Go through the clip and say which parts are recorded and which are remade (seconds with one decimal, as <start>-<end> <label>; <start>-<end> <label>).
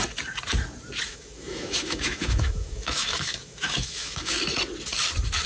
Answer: 0.0-1.1 recorded; 1.1-4.4 remade; 4.4-5.5 recorded